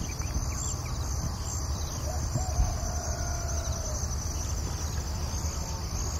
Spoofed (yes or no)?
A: no